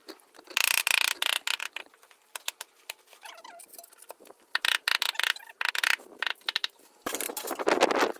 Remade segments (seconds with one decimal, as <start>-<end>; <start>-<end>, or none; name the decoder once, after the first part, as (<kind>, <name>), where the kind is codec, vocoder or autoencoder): none